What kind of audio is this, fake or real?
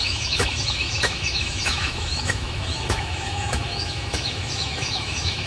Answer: fake